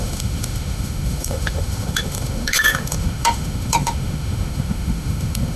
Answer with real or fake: fake